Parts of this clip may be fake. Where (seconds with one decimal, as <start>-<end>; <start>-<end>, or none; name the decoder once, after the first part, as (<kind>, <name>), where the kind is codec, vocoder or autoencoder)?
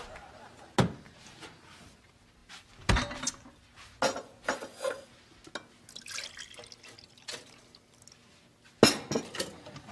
none